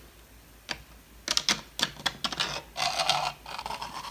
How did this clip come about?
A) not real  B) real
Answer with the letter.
B